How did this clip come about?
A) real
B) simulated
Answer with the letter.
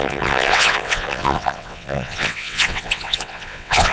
B